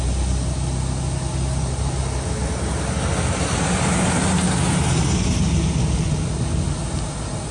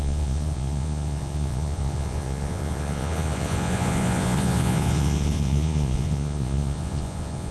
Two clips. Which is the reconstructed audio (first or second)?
second